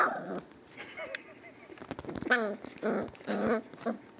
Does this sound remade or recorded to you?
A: recorded